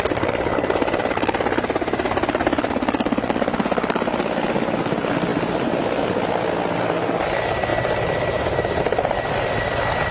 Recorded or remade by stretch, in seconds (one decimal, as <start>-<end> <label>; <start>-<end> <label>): 0.0-10.1 recorded